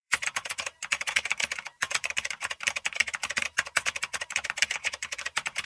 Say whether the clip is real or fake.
fake